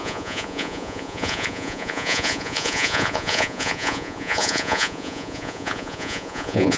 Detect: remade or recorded remade